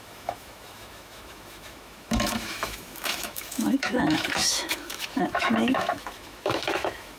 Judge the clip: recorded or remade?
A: remade